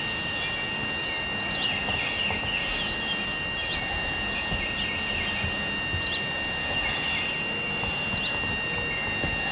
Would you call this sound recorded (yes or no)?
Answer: yes